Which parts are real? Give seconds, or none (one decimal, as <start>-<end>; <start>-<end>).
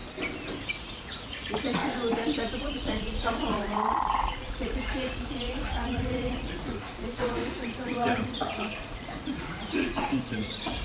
0.0-0.7; 1.8-2.6